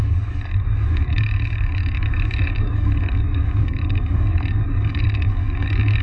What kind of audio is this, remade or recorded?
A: remade